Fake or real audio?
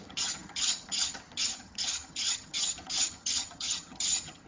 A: fake